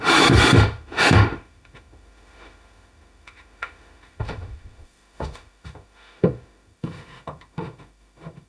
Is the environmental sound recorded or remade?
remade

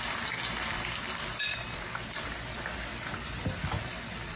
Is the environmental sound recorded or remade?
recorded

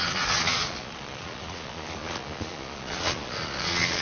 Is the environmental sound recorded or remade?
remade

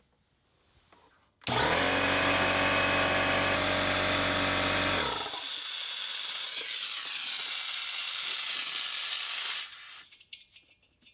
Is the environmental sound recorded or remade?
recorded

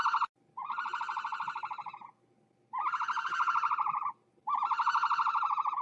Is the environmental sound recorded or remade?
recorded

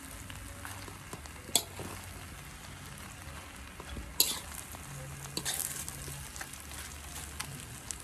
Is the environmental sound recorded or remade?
recorded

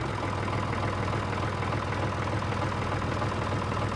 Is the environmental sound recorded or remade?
recorded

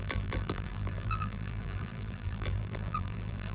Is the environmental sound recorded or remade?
remade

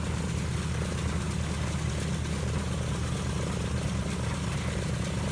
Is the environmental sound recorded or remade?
recorded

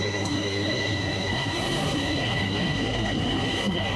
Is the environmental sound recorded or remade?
remade